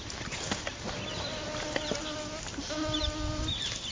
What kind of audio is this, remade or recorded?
recorded